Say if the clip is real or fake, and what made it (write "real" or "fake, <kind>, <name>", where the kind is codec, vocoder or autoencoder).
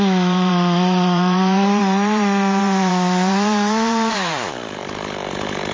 fake, vocoder, BigVGAN v2